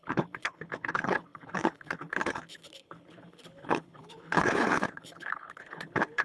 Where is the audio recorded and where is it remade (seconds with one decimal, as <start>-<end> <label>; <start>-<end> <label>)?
0.0-6.2 remade

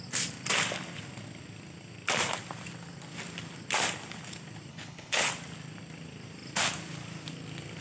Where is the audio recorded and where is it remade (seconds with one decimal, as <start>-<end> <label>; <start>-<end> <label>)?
0.0-4.7 recorded; 4.7-5.3 remade; 5.3-7.8 recorded